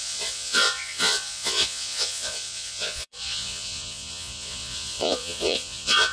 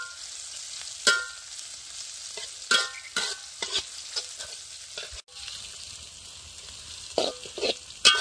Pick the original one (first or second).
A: second